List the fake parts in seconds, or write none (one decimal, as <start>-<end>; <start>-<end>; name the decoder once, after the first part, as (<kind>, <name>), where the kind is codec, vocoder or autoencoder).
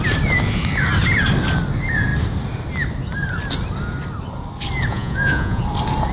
4.9-5.6 (vocoder, Vocos)